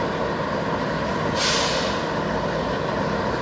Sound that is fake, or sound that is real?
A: real